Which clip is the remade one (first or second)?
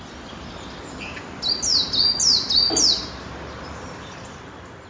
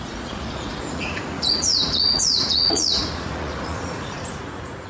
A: second